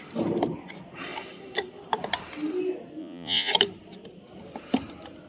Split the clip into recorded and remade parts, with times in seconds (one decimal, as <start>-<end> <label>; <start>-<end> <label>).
0.0-3.0 recorded; 3.0-3.5 remade; 3.5-5.3 recorded